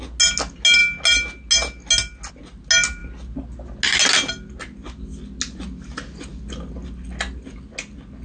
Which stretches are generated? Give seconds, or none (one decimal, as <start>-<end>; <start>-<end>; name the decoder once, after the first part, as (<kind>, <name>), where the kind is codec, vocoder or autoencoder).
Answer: none